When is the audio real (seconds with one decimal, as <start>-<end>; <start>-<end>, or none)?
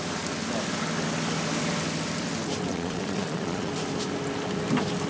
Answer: 0.0-2.7; 3.7-5.1